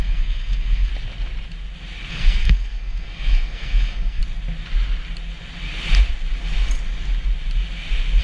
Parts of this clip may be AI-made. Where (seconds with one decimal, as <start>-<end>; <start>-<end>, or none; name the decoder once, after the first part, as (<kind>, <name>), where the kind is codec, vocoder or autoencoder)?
0.0-0.9 (codec, SNAC); 2.1-4.2

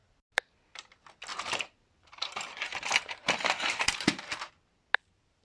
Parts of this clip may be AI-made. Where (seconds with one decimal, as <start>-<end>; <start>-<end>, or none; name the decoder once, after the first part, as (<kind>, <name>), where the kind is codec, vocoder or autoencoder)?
1.3-4.5 (vocoder, BigVGAN v2)

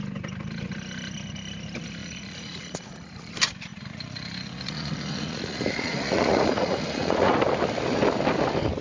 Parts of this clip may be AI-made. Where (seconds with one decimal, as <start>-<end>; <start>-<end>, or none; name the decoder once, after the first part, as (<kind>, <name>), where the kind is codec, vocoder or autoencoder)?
2.0-3.3 (vocoder, Vocos); 3.7-7.4

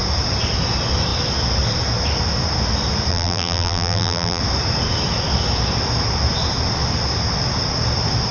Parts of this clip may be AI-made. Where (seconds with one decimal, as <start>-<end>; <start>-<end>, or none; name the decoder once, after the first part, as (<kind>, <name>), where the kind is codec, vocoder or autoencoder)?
3.1-4.4 (vocoder, BigVGAN v2)

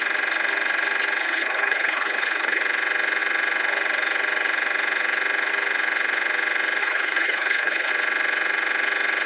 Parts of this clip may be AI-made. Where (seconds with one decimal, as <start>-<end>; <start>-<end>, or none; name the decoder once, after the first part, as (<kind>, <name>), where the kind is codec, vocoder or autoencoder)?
1.2-2.6 (codec, HILCodec); 6.8-7.9

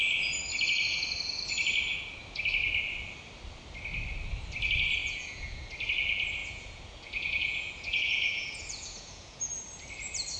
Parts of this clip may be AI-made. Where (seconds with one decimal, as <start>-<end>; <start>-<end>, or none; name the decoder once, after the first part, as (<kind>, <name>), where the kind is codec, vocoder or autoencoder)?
5.0-5.7 (vocoder, Vocos); 6.4-9.5

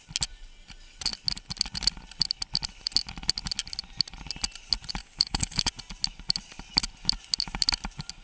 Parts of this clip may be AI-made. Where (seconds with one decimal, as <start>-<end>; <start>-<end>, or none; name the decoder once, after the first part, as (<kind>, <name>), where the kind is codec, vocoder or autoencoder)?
5.0-5.7 (codec, DAC)